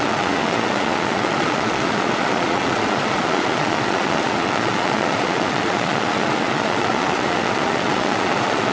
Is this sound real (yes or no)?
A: no